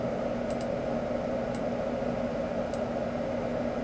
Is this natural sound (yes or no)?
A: yes